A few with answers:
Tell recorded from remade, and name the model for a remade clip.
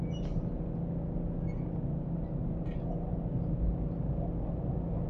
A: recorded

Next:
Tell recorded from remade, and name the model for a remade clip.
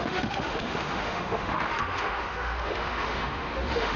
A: remade, autoencoder, DAC-VAE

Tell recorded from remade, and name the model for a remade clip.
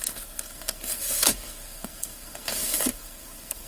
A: remade, codec, SNAC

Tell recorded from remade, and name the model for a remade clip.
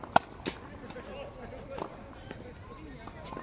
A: recorded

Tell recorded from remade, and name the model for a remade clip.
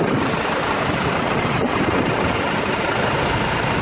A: recorded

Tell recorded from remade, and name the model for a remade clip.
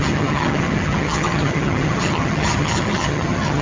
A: remade, vocoder, HiFi-GAN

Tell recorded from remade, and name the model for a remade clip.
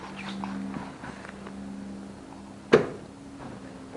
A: recorded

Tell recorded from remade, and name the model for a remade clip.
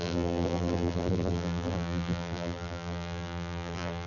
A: remade, vocoder, BigVGAN v2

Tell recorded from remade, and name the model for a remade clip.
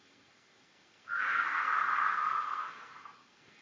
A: remade, codec, SNAC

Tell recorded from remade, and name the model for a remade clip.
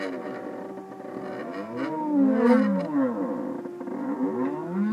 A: recorded